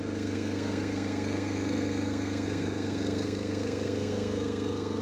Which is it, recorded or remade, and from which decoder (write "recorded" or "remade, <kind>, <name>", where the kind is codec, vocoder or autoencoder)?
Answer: remade, codec, SNAC